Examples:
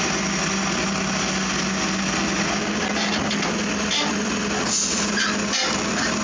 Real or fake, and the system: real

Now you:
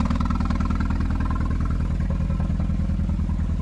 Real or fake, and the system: real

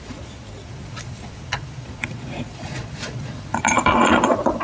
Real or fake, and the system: fake, vocoder, Vocos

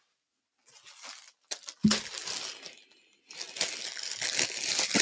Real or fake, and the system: real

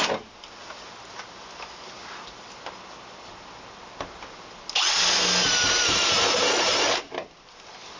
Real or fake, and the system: real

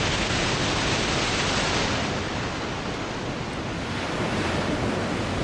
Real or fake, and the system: real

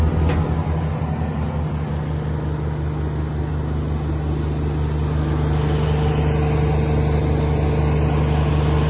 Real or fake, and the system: real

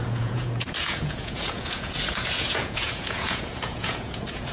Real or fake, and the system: fake, vocoder, Vocos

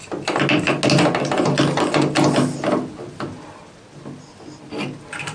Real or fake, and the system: real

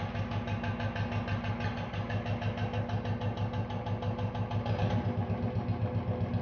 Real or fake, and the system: real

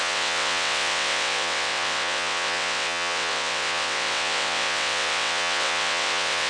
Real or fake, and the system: fake, vocoder, WaveNeXt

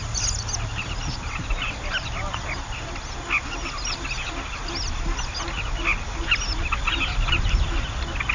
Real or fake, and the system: real